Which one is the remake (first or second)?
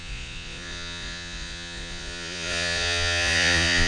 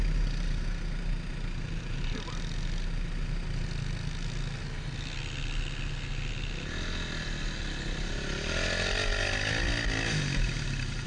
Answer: first